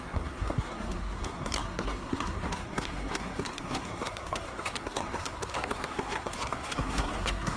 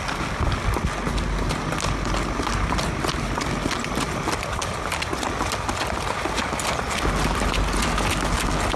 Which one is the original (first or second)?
second